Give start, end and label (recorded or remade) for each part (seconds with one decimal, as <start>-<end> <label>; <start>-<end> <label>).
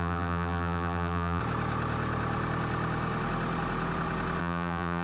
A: 0.0-1.4 remade; 1.4-4.4 recorded; 4.4-5.0 remade